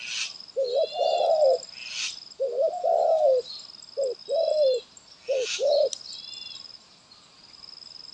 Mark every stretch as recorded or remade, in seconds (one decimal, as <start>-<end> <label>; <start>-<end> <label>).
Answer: 0.0-8.1 recorded